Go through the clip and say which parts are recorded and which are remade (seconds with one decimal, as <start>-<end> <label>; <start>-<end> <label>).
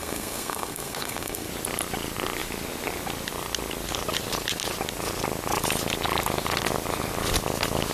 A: 0.0-1.5 remade; 1.5-7.9 recorded